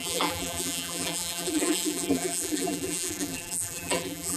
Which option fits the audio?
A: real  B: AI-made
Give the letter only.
B